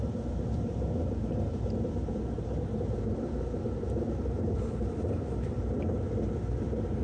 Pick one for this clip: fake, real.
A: fake